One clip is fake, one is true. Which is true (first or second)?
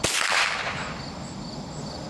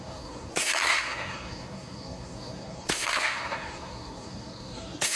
first